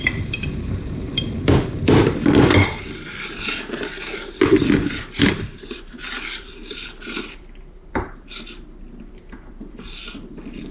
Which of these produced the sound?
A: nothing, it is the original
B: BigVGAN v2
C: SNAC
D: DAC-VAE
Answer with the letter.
B